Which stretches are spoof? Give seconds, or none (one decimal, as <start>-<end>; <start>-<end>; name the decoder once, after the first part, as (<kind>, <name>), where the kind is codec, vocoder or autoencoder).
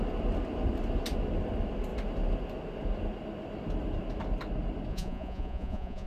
4.9-6.1 (vocoder, Vocos)